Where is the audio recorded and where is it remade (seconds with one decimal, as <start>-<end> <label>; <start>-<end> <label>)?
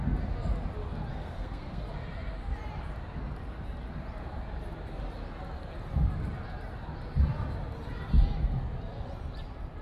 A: 0.0-1.1 recorded; 1.1-1.8 remade; 1.8-9.8 recorded